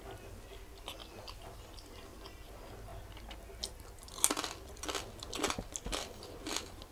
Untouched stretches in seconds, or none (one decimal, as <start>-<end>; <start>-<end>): 0.0-6.9